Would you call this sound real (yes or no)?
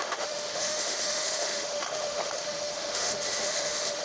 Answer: no